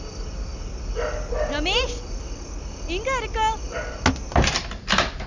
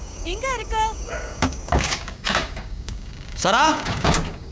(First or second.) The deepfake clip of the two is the second